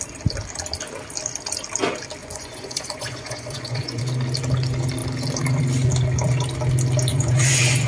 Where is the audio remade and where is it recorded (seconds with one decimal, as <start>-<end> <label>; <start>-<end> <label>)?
0.0-2.2 recorded; 2.2-4.0 remade; 4.0-7.1 recorded; 7.1-7.9 remade